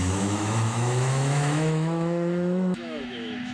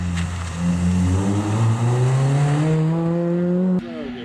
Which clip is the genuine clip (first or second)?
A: second